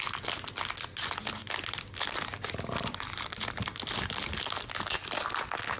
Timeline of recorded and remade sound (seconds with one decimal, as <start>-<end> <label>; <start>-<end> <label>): 0.0-5.8 recorded